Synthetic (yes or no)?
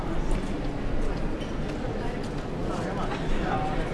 no